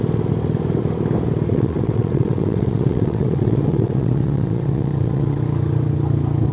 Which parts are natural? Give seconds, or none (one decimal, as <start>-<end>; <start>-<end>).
0.0-1.5; 5.4-6.5